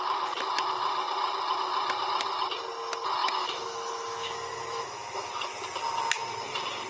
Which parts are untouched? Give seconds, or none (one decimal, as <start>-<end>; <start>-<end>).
0.0-3.2; 5.3-6.9